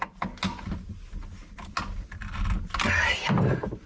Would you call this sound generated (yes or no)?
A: no